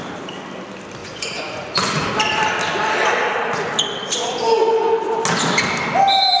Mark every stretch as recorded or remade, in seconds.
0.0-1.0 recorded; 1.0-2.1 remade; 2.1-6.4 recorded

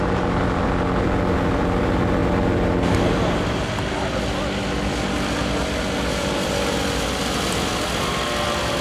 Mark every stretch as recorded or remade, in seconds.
0.0-8.8 recorded

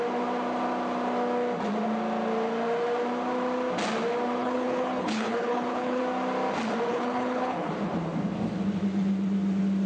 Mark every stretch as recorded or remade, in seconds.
0.0-4.4 recorded; 4.4-6.0 remade; 6.0-6.9 recorded; 6.9-7.7 remade; 7.7-9.9 recorded

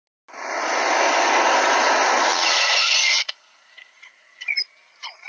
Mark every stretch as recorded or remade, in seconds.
0.0-2.3 recorded; 2.3-4.2 remade; 4.2-5.3 recorded

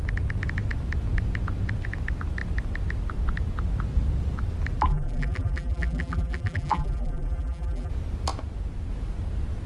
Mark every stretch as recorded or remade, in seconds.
0.0-4.9 recorded; 4.9-7.9 remade; 7.9-9.7 recorded

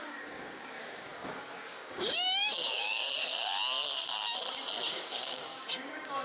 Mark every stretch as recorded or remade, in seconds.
0.0-3.0 remade; 3.0-4.9 recorded; 4.9-6.2 remade